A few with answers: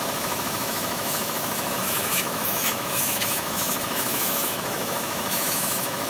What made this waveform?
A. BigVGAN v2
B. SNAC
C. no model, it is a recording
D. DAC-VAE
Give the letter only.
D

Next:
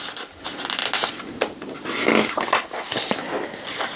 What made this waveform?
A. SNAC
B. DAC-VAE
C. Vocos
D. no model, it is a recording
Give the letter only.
D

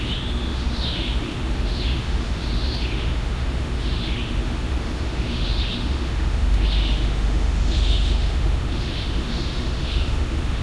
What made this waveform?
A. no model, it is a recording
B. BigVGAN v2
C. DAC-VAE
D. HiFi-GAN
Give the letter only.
C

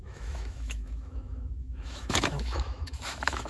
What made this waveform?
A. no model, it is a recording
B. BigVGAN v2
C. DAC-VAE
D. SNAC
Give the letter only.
C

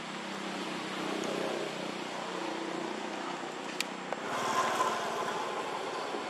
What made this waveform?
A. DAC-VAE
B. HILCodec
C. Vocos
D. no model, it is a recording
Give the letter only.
D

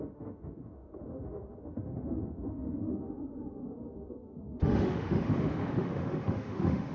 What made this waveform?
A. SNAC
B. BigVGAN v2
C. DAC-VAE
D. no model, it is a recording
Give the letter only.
C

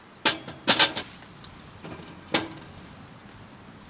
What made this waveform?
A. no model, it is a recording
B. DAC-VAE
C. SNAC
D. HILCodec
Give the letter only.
A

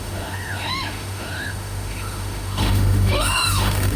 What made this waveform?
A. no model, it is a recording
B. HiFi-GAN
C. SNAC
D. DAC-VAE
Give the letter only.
D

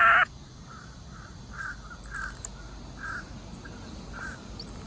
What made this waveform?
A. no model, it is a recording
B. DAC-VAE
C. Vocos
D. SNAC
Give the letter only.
A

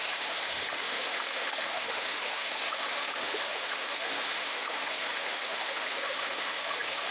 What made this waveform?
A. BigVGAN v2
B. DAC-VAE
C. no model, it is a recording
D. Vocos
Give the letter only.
B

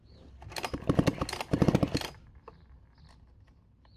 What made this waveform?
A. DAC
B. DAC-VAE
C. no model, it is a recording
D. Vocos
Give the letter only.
C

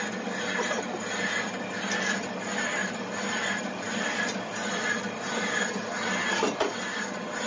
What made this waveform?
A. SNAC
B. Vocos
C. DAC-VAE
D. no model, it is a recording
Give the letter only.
D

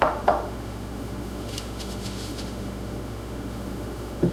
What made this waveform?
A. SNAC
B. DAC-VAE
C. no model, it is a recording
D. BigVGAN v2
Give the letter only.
B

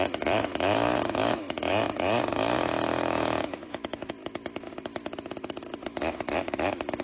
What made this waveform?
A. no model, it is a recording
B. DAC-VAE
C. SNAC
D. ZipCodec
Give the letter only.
B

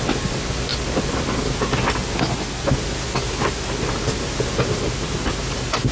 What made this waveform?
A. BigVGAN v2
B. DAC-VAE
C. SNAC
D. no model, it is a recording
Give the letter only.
D